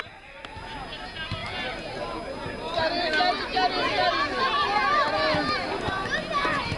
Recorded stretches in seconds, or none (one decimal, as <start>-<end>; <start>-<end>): 0.0-6.8